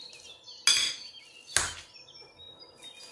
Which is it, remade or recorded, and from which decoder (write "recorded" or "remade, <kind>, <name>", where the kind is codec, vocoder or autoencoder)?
recorded